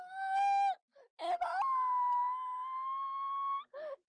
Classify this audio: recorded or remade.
recorded